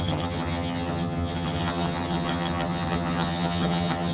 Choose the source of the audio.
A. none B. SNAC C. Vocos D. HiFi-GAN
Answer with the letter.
D